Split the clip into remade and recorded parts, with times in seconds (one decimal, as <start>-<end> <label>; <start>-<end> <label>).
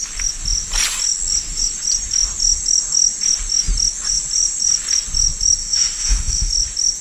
0.0-5.6 recorded; 5.6-6.5 remade; 6.5-7.0 recorded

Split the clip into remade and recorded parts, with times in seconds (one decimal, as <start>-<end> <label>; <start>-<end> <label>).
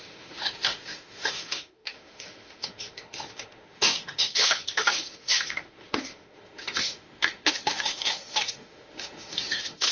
0.0-9.9 remade